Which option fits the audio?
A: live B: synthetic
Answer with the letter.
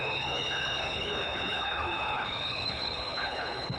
B